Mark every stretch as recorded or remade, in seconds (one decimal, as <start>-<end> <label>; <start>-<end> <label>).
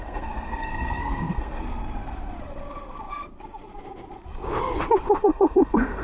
0.0-1.6 remade; 1.6-5.2 recorded; 5.2-6.0 remade